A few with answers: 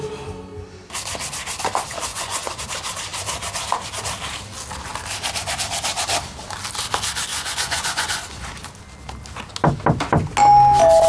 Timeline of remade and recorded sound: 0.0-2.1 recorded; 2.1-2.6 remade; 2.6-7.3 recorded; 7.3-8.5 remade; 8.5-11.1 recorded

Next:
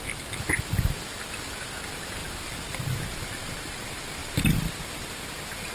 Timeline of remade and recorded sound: 0.0-2.2 recorded; 2.2-3.2 remade; 3.2-4.2 recorded; 4.2-5.3 remade; 5.3-5.7 recorded

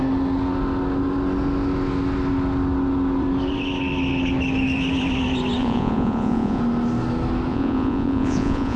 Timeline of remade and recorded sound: 0.0-5.6 recorded; 5.6-6.6 remade; 6.6-7.5 recorded; 7.5-8.8 remade

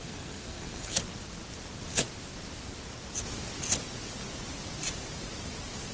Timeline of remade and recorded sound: 0.0-1.0 remade; 1.0-5.9 recorded